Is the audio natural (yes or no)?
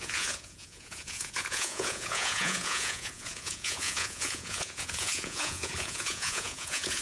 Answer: no